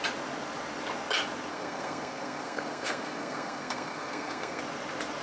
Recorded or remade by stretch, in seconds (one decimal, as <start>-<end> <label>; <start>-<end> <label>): 0.0-1.5 recorded; 1.5-4.6 remade; 4.6-5.2 recorded